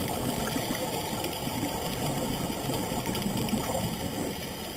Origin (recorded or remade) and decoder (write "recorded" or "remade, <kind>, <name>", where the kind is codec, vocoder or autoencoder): recorded